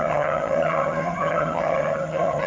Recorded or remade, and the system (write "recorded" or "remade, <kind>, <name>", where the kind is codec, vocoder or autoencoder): remade, vocoder, HiFi-GAN